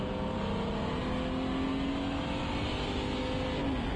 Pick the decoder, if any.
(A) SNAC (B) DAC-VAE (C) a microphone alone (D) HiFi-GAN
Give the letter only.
C